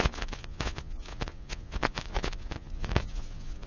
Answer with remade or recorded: remade